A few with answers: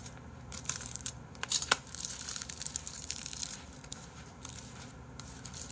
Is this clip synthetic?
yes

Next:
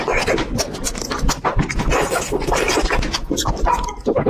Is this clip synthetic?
no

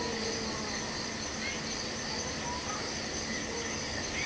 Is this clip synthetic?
no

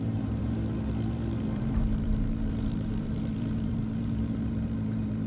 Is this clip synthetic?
yes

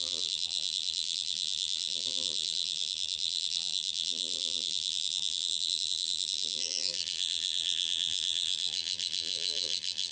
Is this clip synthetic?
yes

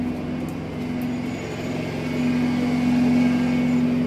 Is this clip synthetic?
no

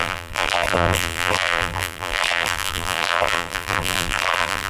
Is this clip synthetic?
yes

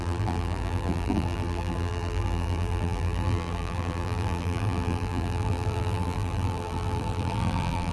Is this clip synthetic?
yes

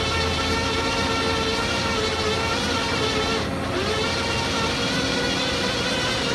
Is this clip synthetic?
no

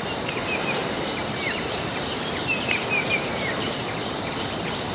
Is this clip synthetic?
yes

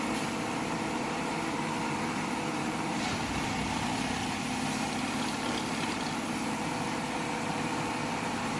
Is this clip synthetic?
yes